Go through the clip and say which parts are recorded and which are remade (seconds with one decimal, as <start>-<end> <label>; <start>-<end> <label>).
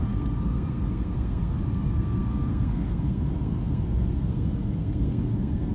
0.0-5.7 remade